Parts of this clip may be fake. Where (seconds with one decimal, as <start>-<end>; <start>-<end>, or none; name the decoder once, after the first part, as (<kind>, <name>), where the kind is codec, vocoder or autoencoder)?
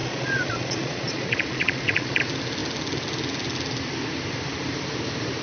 0.0-2.2 (vocoder, Vocos)